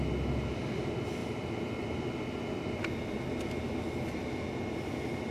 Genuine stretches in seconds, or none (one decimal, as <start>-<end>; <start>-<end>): 0.0-5.3